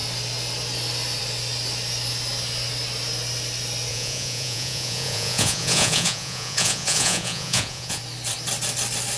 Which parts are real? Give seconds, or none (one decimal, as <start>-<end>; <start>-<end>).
0.0-3.9; 8.0-9.2